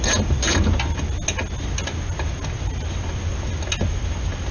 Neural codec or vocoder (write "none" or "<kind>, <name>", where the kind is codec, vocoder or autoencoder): none